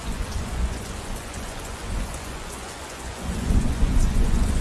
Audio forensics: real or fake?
fake